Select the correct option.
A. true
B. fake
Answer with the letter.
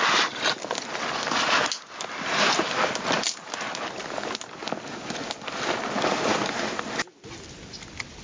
A